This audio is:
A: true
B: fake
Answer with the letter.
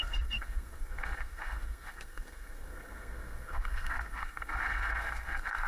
B